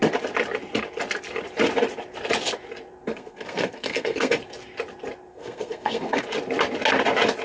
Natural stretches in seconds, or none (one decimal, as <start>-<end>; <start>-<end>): 0.0-3.1; 4.4-5.3; 6.2-7.4